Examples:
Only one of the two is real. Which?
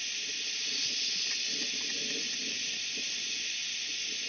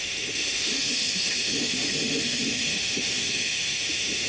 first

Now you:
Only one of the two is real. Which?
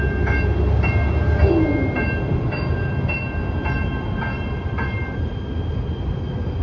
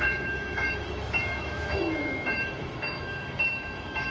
first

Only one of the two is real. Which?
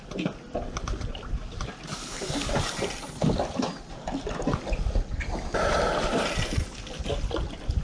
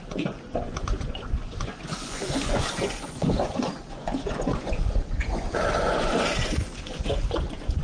first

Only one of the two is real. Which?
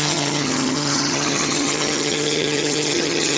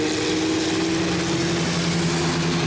second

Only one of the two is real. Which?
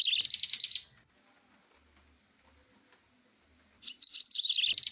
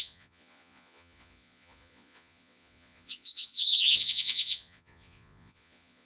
first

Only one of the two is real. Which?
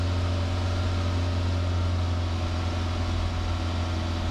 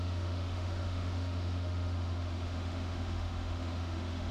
first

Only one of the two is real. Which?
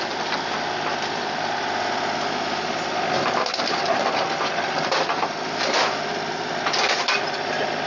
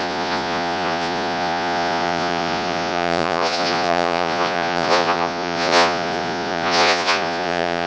first